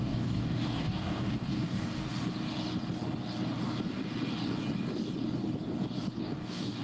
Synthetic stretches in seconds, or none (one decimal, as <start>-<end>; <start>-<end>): 0.0-2.1; 6.2-6.8